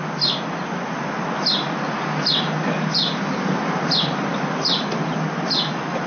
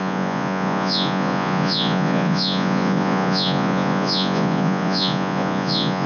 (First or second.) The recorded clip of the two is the first